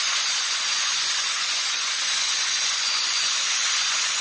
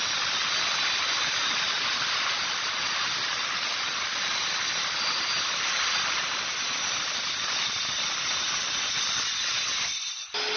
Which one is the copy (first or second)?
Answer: first